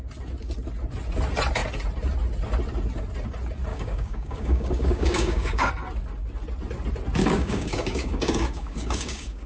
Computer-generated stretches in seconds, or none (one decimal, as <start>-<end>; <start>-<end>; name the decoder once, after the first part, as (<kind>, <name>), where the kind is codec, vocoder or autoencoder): 3.7-5.7 (codec, DAC); 7.2-9.5